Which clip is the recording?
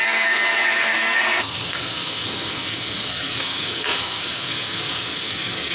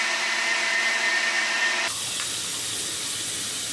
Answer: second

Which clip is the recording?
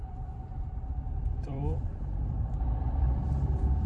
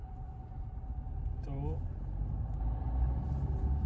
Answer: second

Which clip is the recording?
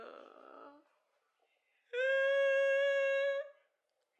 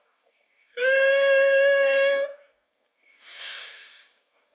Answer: first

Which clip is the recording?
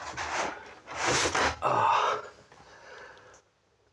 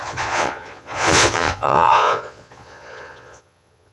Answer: first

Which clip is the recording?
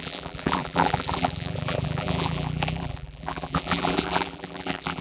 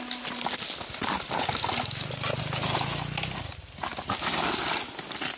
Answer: second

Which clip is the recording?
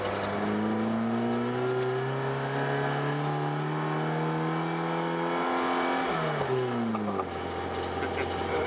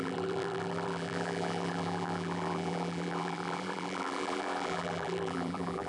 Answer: first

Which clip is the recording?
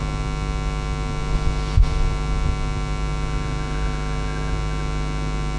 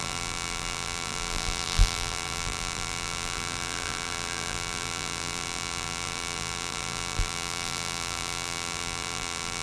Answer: first